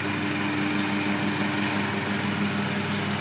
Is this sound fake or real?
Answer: real